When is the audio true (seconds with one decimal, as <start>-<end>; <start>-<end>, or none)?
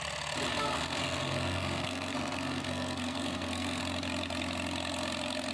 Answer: 0.0-0.5; 3.8-5.5